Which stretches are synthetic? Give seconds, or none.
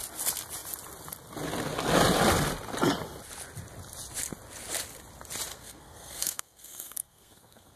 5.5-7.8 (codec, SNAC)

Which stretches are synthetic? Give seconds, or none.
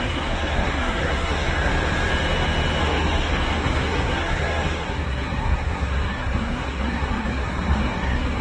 0.0-1.7 (codec, SNAC); 2.8-8.4